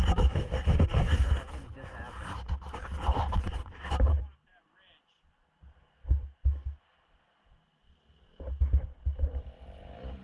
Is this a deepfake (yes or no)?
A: no